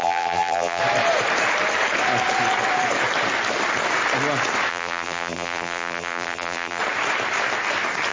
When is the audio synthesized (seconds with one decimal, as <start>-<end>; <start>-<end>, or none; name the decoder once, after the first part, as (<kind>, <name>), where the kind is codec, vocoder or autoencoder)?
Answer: 0.0-0.8 (vocoder, BigVGAN v2); 4.7-6.8